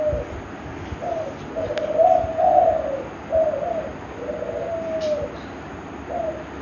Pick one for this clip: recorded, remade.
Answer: recorded